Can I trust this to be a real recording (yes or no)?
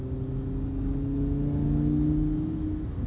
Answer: yes